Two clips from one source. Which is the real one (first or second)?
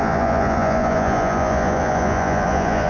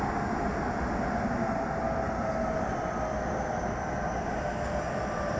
second